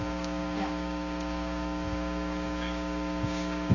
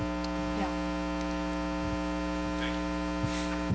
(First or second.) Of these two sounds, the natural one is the second